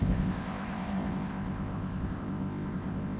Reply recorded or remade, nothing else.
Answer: remade